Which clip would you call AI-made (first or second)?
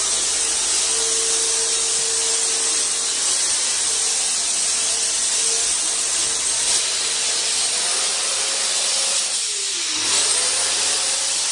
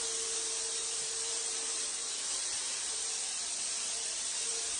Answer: second